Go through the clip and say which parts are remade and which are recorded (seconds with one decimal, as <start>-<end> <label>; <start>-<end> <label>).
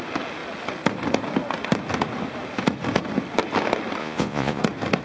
0.0-4.0 recorded; 4.0-4.6 remade; 4.6-5.0 recorded